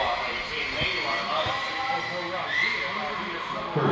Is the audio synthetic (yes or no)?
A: no